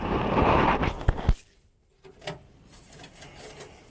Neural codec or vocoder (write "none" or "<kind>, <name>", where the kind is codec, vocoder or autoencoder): none